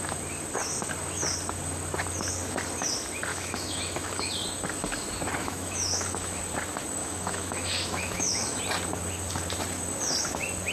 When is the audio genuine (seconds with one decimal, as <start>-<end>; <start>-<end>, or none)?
0.0-3.3; 4.3-5.4; 6.4-7.0; 8.6-10.7